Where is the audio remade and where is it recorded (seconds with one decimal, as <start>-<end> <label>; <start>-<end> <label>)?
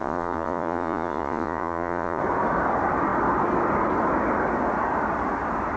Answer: 0.0-2.2 remade; 2.2-5.8 recorded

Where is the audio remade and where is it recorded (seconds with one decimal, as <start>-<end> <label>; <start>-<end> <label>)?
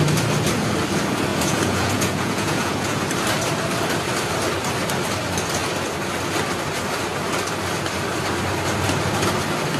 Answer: 0.0-1.3 recorded; 1.3-3.0 remade; 3.0-9.8 recorded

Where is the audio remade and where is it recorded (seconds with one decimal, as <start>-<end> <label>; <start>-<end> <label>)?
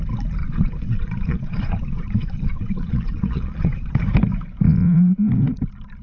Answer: 0.0-0.4 recorded; 0.4-4.0 remade; 4.0-6.0 recorded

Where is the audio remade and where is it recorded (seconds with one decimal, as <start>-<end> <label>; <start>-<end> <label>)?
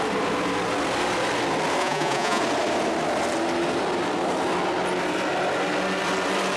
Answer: 0.0-1.8 recorded; 1.8-2.4 remade; 2.4-6.6 recorded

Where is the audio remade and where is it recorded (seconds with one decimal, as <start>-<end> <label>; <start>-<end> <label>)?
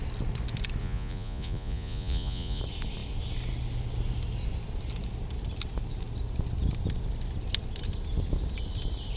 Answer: 0.0-0.8 recorded; 0.8-2.6 remade; 2.6-9.2 recorded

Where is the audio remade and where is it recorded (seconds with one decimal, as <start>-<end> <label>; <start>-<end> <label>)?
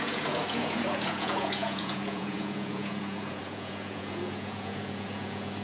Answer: 0.0-5.6 remade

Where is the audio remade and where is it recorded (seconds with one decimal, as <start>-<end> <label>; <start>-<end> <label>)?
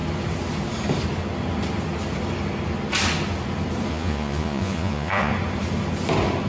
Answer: 0.0-3.9 recorded; 3.9-5.3 remade; 5.3-6.5 recorded